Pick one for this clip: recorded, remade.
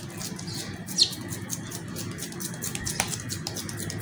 recorded